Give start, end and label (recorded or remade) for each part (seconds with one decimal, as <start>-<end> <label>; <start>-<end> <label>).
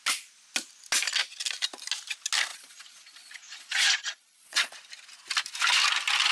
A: 0.0-2.5 recorded; 2.5-4.7 remade; 4.7-6.3 recorded